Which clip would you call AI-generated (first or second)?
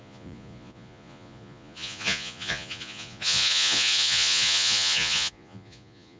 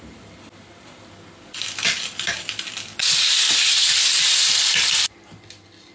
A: first